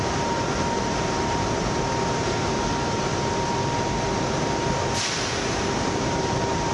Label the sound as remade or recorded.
remade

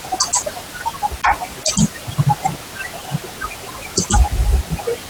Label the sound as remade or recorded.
recorded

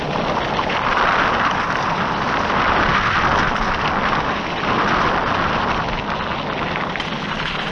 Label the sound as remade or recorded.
recorded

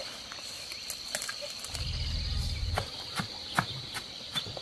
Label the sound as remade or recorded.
remade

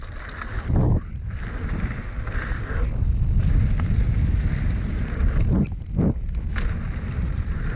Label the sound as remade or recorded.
recorded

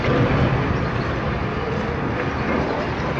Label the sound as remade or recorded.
recorded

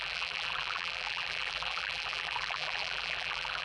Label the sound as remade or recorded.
remade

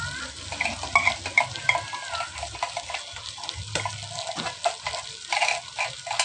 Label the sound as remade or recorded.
recorded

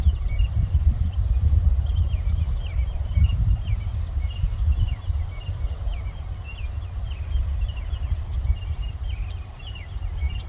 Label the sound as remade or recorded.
remade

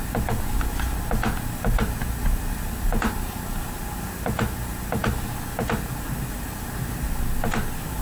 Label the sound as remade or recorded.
recorded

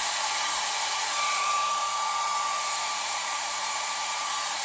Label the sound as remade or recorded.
remade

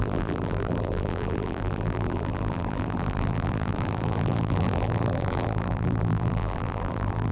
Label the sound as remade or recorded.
remade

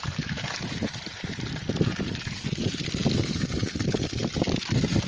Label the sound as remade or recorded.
remade